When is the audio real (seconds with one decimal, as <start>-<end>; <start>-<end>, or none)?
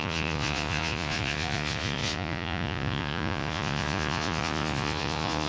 none